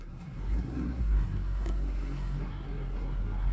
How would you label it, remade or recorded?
remade